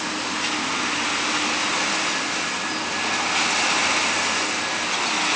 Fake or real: real